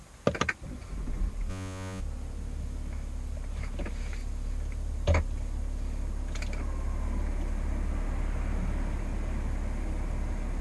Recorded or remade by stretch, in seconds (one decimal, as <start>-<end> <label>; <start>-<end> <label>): 0.0-1.5 recorded; 1.5-2.0 remade; 2.0-10.6 recorded